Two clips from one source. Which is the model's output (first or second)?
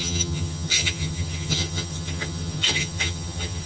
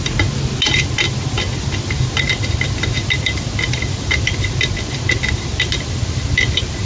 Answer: first